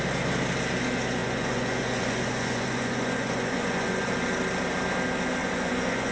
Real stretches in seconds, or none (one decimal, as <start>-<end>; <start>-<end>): 0.0-1.2; 4.1-5.4